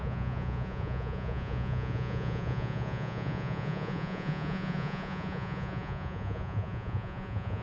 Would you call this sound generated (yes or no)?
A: yes